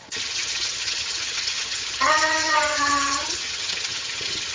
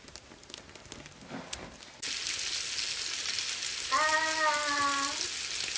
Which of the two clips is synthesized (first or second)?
first